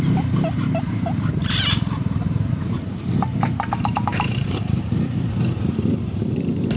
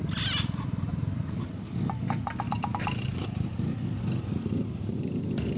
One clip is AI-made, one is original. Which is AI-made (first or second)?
first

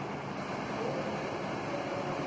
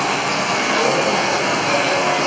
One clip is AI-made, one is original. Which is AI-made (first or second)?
second